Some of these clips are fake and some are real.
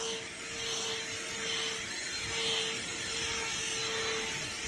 real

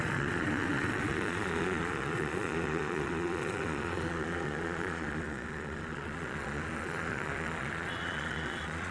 fake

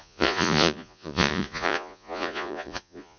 fake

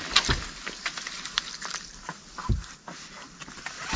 real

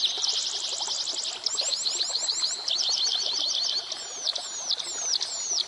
real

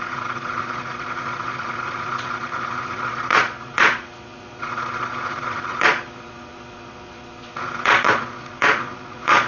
fake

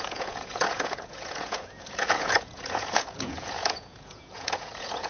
fake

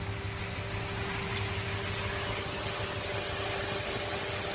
real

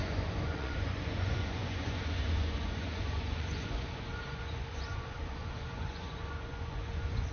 fake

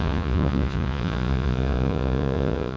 fake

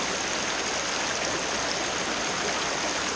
real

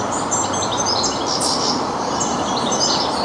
real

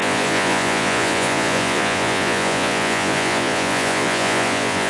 fake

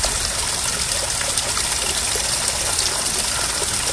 real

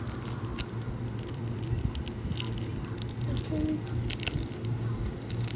real